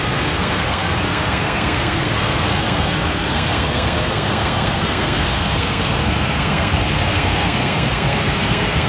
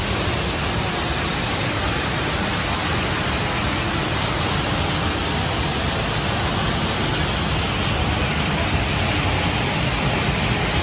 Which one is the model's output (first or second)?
first